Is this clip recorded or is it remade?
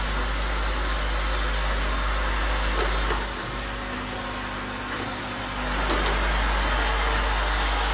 recorded